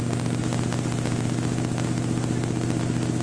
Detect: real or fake real